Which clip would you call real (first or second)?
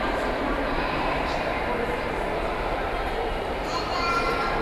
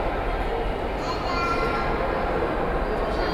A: second